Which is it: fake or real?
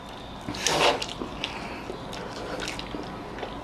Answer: real